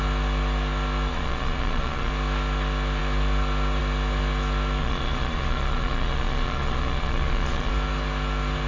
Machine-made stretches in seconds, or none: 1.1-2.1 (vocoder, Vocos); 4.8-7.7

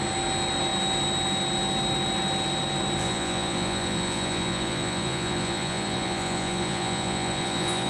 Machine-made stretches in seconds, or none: 3.0-7.9 (vocoder, Vocos)

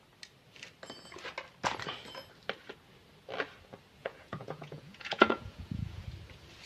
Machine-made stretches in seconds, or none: 4.0-6.0 (vocoder, Vocos)

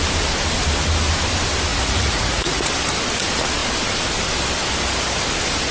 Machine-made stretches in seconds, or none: 1.7-2.7 (vocoder, Vocos)